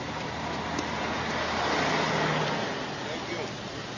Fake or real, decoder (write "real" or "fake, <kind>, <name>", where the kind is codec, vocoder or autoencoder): real